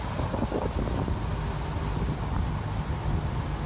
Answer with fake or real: real